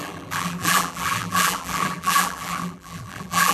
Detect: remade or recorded remade